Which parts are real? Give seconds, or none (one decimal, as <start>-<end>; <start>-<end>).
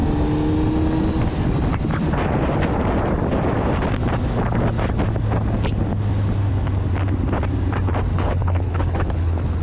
0.0-8.1